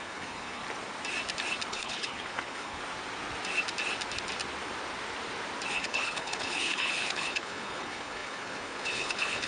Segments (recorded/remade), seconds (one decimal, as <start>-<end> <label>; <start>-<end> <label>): 0.0-0.6 remade; 0.6-1.7 recorded; 1.7-2.8 remade; 2.8-5.7 recorded; 5.7-9.5 remade